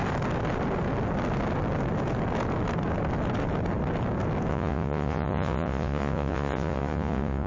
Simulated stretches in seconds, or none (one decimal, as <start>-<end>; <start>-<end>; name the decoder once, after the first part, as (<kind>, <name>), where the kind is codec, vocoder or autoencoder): 4.5-7.5 (vocoder, Vocos)